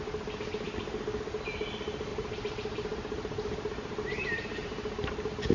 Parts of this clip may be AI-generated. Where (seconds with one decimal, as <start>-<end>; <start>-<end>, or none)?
2.1-5.5